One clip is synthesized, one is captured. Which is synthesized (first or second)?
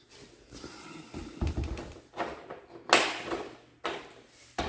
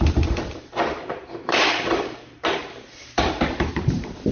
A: second